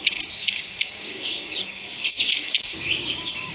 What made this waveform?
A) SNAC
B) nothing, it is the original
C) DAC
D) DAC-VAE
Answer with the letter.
C